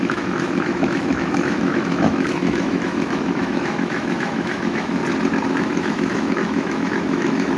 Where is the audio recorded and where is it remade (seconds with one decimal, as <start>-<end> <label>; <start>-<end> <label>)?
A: 0.0-5.0 remade; 5.0-5.5 recorded; 5.5-7.6 remade